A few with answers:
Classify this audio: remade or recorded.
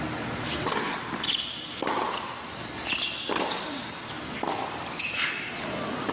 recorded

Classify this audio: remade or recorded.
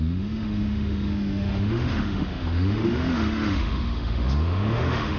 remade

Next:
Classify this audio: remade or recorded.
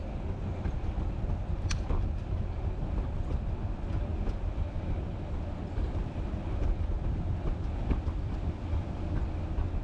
recorded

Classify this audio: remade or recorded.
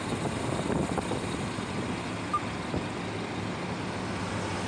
recorded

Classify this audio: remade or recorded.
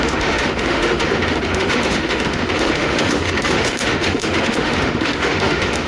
remade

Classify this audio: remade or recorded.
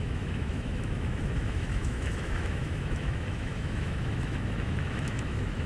remade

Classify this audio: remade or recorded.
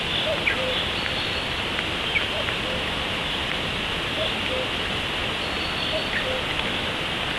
recorded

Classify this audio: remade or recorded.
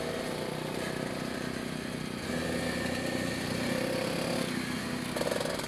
recorded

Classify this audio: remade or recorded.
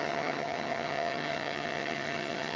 remade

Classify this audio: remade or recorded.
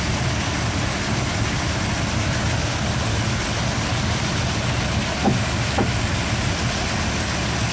recorded